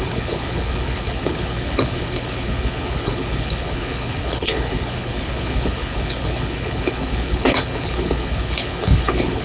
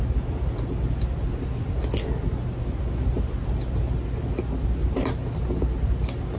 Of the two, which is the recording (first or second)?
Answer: second